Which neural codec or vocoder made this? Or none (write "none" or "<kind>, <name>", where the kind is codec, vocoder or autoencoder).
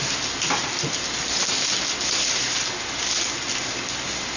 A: none